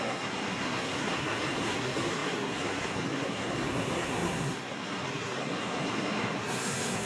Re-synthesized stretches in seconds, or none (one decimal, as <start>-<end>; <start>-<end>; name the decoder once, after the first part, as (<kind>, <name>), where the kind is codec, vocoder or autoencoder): 0.0-7.1 (codec, SNAC)